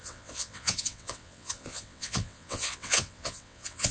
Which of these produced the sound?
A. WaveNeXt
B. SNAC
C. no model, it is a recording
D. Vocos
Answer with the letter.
A